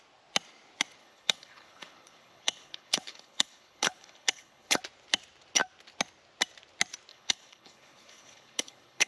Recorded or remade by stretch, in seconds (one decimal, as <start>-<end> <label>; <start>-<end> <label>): 0.0-1.0 recorded; 1.0-4.8 remade; 4.8-7.1 recorded; 7.1-9.1 remade